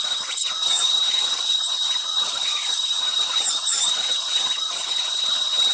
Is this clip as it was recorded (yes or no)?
no